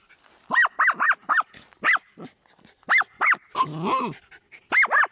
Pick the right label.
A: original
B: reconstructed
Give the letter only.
A